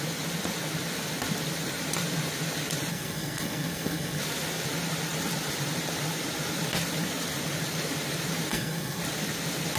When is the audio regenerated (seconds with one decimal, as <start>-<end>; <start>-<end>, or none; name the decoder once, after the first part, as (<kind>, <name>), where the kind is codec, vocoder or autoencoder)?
2.9-4.2 (codec, SNAC); 8.5-9.0